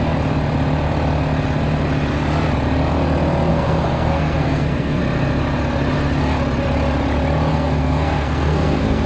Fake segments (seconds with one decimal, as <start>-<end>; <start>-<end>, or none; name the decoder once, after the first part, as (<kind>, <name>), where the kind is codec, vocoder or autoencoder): 3.5-5.0 (codec, SNAC); 7.5-9.1